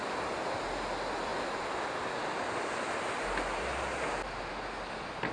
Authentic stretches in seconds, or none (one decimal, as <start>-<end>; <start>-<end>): 0.0-5.3